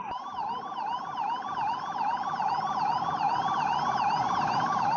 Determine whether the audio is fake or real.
real